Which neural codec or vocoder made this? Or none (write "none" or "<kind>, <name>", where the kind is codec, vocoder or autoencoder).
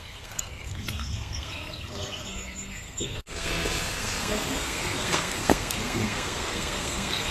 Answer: codec, SNAC